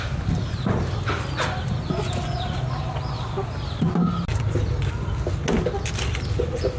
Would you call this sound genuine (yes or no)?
yes